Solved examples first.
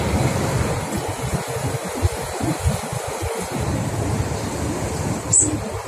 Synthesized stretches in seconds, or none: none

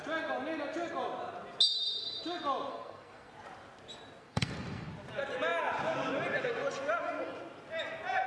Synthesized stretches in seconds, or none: 2.7-3.3 (codec, SNAC); 4.2-4.9

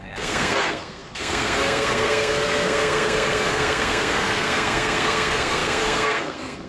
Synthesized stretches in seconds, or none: 0.0-6.7 (codec, SNAC)

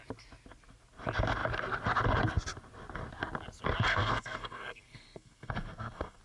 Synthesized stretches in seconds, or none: 3.9-6.2 (codec, SNAC)

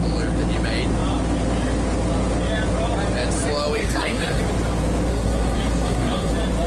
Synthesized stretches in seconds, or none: 3.8-4.4 (codec, SNAC); 5.1-6.3